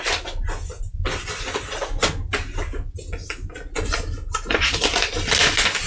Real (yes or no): yes